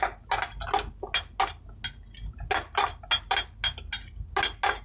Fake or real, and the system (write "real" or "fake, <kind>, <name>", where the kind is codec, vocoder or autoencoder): real